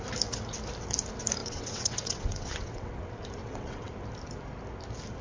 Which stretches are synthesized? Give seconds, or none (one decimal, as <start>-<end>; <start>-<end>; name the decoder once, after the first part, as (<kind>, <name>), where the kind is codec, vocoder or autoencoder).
1.4-3.0 (vocoder, WaveNeXt); 3.4-3.9